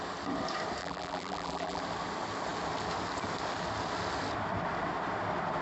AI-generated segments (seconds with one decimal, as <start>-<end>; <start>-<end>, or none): 0.8-1.8